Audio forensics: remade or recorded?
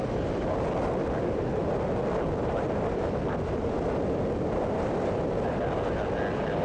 recorded